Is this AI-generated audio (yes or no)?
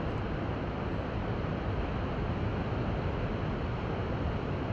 no